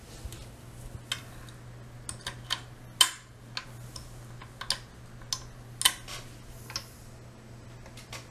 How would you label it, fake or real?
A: real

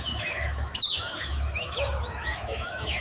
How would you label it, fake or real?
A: fake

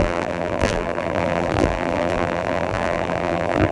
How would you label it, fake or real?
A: fake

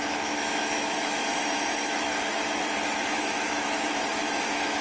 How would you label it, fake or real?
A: fake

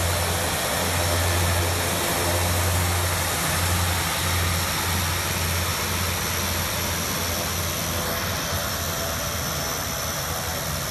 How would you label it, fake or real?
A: real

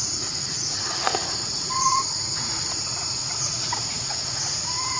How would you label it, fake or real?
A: fake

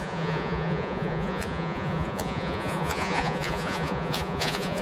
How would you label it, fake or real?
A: fake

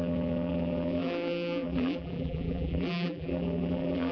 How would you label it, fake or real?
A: fake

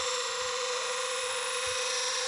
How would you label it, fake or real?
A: fake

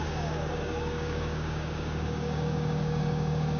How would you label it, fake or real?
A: fake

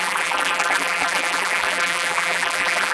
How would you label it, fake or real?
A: fake